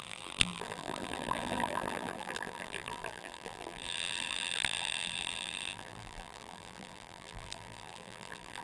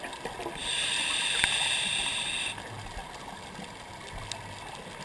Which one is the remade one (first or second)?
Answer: first